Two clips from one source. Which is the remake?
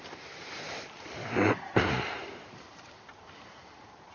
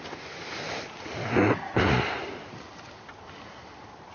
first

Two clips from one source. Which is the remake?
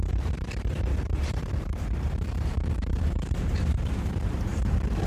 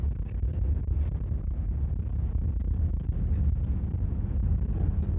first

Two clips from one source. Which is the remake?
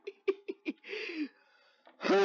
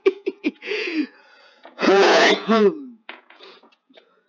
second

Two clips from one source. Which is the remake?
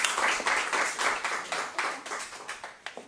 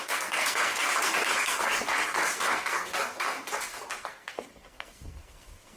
second